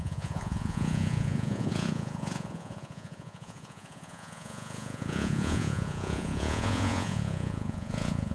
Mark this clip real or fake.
fake